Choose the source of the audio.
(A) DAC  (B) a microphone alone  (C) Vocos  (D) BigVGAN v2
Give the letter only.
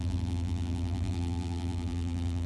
D